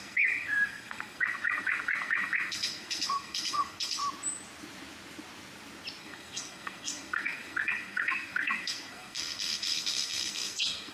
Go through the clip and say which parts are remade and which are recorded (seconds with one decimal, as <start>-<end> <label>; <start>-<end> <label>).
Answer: 0.0-4.0 remade; 4.0-6.0 recorded; 6.0-10.9 remade

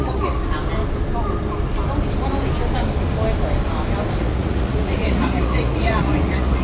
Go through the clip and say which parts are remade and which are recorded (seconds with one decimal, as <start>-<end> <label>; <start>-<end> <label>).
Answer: 0.0-0.4 remade; 0.4-4.2 recorded; 4.2-6.6 remade